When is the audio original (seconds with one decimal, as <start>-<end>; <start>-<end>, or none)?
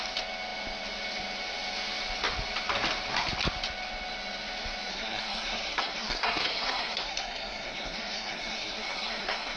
0.0-4.9